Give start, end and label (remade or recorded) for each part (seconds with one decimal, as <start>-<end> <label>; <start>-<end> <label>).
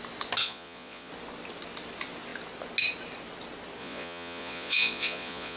0.0-0.4 recorded; 0.4-1.1 remade; 1.1-3.8 recorded; 3.8-5.6 remade